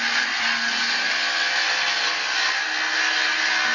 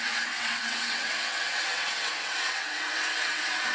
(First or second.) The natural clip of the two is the first